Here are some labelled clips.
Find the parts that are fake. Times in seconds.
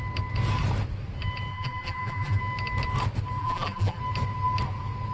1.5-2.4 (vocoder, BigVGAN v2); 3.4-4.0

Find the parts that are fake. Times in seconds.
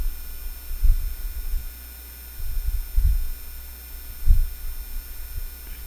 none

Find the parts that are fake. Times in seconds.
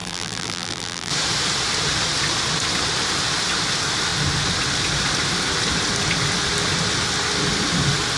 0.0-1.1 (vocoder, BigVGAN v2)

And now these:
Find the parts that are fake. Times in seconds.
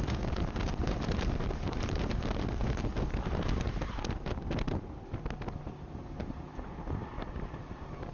0.0-2.9 (vocoder, BigVGAN v2); 5.6-8.1